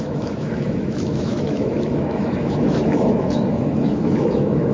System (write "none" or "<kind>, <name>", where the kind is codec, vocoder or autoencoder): autoencoder, DAC-VAE